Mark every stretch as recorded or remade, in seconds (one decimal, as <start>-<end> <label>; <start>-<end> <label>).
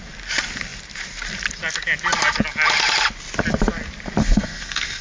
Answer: 0.0-4.2 recorded; 4.2-5.0 remade